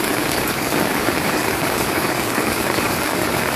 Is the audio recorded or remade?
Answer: remade